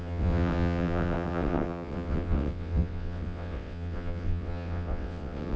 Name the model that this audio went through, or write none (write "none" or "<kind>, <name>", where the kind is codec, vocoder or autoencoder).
vocoder, WaveNeXt